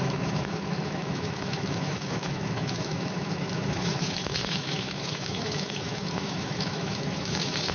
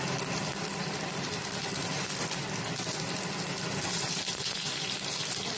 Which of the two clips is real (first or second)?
second